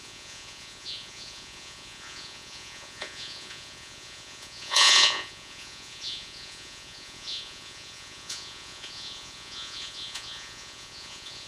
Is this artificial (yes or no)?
yes